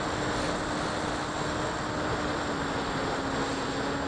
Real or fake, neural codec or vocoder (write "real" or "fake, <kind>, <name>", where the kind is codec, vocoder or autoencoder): real